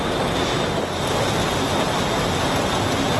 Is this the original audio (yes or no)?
yes